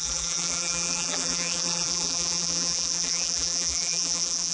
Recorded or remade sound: remade